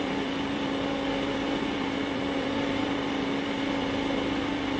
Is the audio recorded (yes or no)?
no